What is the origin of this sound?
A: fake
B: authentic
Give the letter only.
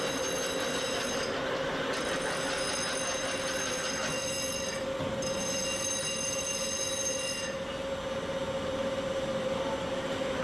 B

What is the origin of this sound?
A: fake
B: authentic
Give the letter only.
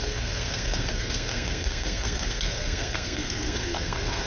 A